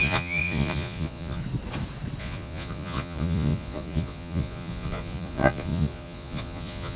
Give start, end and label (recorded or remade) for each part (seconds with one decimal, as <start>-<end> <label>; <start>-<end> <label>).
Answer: 0.0-1.4 remade; 1.4-2.2 recorded; 2.2-7.0 remade